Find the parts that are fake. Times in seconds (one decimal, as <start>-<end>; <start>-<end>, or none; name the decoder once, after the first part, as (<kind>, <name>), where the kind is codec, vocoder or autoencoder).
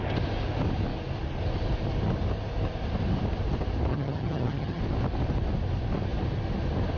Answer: 3.9-4.8 (vocoder, HiFi-GAN)